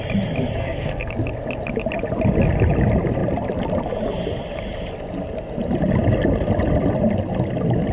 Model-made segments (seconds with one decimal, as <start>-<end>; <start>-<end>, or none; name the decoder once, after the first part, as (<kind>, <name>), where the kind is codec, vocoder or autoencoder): 0.6-1.1 (codec, SNAC)